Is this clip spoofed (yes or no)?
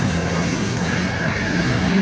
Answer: yes